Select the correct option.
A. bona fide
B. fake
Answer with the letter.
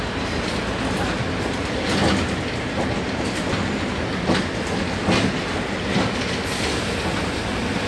A